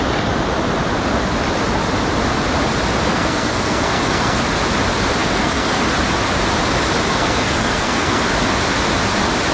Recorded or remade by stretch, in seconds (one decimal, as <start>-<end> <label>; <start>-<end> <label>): 0.0-3.1 recorded; 3.1-4.4 remade; 4.4-5.2 recorded; 5.2-5.8 remade; 5.8-7.1 recorded; 7.1-8.2 remade; 8.2-9.5 recorded